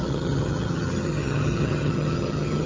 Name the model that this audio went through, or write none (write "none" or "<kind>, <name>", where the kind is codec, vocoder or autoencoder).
vocoder, HiFi-GAN